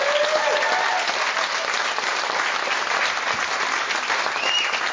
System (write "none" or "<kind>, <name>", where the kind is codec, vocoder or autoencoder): none